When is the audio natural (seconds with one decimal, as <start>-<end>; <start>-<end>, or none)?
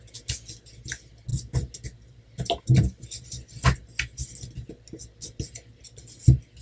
0.0-6.6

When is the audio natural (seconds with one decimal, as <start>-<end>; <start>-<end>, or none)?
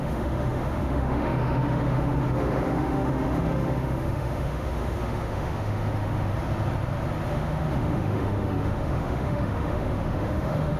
6.3-7.3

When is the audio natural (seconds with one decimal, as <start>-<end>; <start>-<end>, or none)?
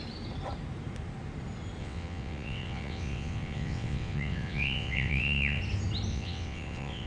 0.0-1.8; 5.6-6.1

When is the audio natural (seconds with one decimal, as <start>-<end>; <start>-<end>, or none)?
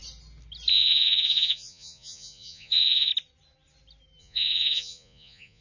0.0-0.7; 3.1-4.2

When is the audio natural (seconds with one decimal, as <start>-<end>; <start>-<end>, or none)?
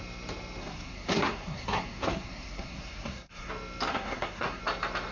0.0-0.6; 3.5-3.9; 4.6-5.1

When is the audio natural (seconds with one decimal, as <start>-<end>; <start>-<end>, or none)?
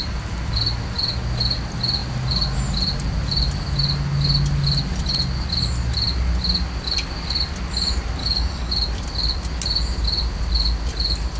0.0-8.2; 8.7-11.4